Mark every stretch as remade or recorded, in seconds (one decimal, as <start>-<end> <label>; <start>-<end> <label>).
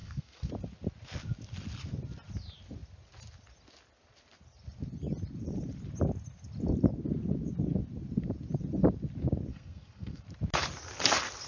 0.0-0.5 remade; 0.5-9.5 recorded; 9.5-10.2 remade; 10.2-11.5 recorded